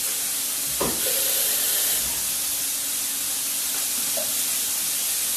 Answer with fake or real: real